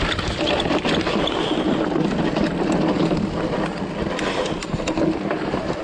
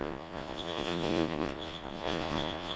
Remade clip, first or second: second